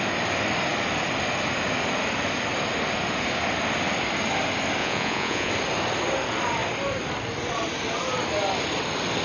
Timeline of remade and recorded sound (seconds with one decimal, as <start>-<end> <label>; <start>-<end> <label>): 0.0-4.8 recorded; 4.8-5.5 remade; 5.5-9.2 recorded